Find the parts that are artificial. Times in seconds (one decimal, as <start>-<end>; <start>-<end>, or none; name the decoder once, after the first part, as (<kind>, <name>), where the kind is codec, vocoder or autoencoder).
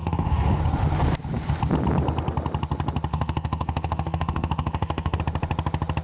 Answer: 0.0-0.6 (codec, SNAC); 3.1-5.2